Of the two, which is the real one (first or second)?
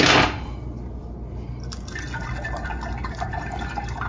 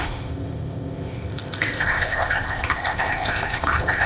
first